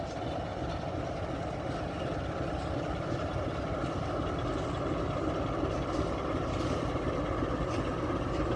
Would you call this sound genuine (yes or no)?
yes